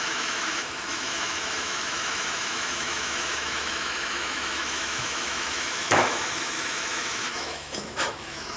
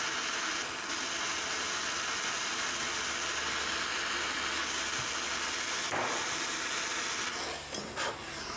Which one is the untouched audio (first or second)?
second